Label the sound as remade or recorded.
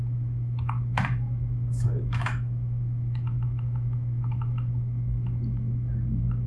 remade